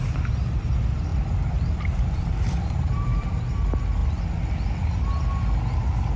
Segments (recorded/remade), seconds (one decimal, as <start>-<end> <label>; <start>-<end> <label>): 0.0-1.1 recorded; 1.1-3.4 remade; 3.4-6.2 recorded

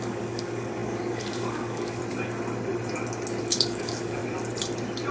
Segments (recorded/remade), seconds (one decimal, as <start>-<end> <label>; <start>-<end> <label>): 0.0-2.0 remade; 2.0-3.4 recorded; 3.4-4.2 remade; 4.2-5.1 recorded

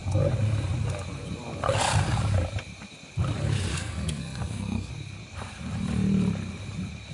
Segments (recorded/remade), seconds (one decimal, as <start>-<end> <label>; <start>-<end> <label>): 0.0-3.7 recorded; 3.7-4.9 remade; 4.9-7.1 recorded